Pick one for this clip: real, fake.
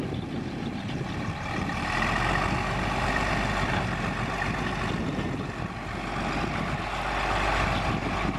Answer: real